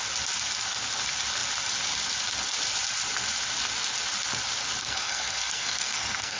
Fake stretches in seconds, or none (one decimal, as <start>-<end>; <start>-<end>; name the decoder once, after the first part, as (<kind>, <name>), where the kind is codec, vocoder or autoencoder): 4.8-6.4 (codec, SNAC)